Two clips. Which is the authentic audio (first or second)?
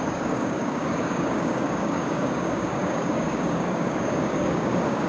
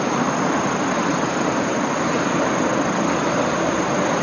second